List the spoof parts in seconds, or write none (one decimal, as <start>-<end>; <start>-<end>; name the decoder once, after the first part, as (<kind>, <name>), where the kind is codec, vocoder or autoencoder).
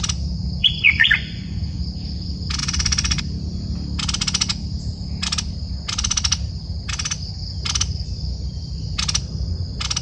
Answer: 0.6-1.8 (vocoder, Vocos); 2.6-3.2